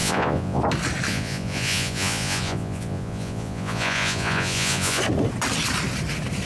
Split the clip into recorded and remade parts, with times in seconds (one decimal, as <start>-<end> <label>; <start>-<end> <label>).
0.0-0.6 remade; 0.6-1.1 recorded; 1.1-5.0 remade; 5.0-6.5 recorded